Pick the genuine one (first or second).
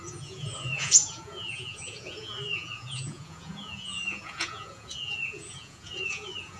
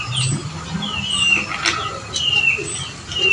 second